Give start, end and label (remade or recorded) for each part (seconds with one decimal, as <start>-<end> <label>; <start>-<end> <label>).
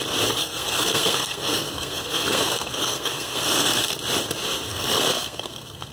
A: 0.0-0.4 recorded; 0.4-3.9 remade; 3.9-4.7 recorded; 4.7-5.9 remade